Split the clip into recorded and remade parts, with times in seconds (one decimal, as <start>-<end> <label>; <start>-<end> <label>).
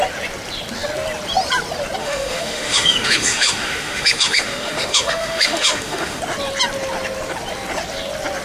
0.0-2.0 recorded; 2.0-6.2 remade; 6.2-8.4 recorded